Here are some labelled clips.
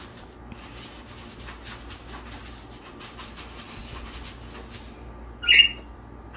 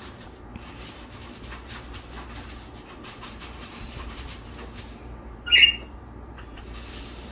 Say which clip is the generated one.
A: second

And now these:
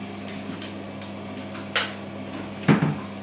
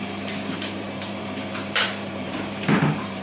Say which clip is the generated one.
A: second